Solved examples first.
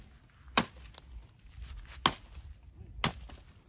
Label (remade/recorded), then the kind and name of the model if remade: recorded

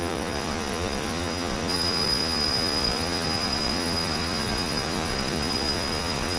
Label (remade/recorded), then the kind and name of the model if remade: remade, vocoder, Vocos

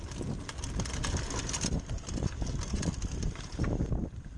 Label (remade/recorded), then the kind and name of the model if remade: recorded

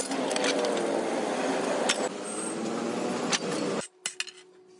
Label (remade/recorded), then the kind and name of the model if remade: recorded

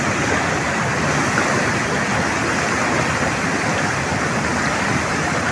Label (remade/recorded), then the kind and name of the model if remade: recorded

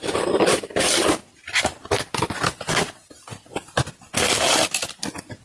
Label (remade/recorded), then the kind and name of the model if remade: recorded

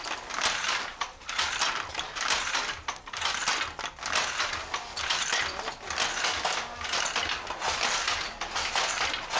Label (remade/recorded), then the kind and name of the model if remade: recorded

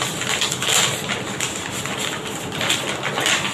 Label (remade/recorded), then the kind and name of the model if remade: recorded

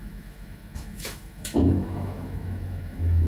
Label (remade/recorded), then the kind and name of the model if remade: remade, autoencoder, DAC-VAE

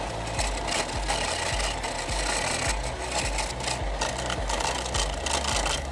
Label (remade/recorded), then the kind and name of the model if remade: recorded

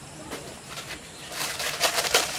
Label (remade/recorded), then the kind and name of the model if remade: remade, vocoder, BigVGAN v2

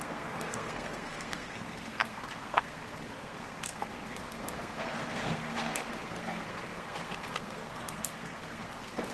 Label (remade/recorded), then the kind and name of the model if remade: remade, codec, SNAC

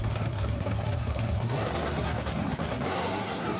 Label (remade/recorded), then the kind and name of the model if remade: remade, codec, SNAC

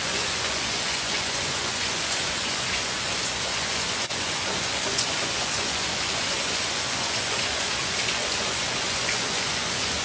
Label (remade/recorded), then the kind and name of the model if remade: remade, vocoder, Vocos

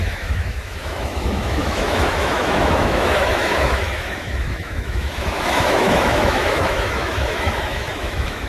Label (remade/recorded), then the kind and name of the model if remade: remade, autoencoder, DAC-VAE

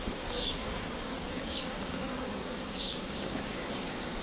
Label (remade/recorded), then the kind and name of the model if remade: remade, codec, DAC